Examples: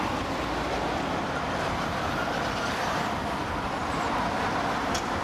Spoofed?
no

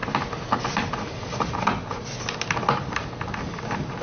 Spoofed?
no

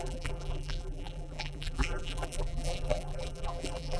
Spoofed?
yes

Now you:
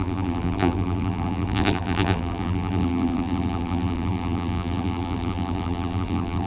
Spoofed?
yes